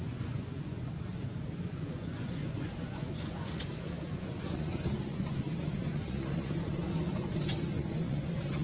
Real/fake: fake